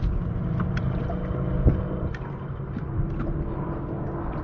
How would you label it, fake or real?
real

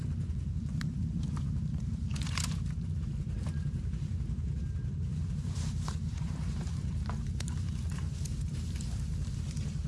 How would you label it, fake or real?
fake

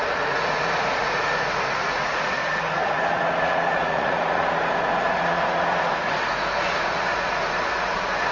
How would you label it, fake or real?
fake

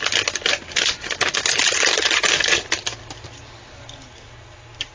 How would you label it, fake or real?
real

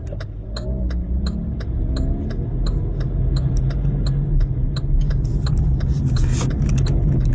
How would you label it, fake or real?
real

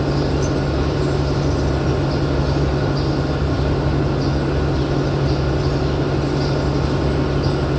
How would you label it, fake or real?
real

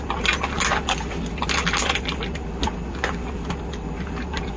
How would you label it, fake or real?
real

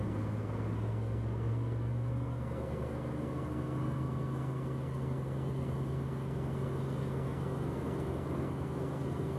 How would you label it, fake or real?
fake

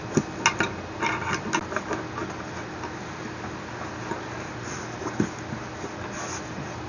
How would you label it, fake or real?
real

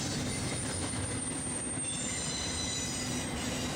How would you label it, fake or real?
real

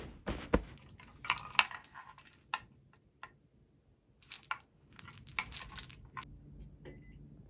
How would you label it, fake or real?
real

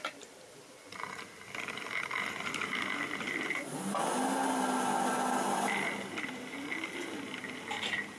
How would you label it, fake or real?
real